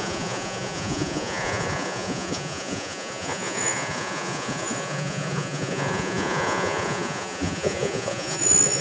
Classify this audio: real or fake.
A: fake